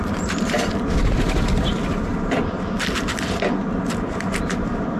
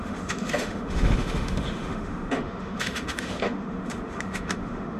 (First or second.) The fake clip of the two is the second